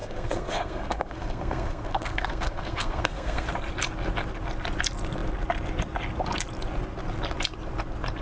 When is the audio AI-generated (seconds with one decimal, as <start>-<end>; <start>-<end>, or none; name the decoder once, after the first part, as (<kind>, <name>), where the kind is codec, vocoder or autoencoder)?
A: 0.0-3.5 (codec, SNAC)